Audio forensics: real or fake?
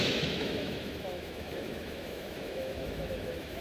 fake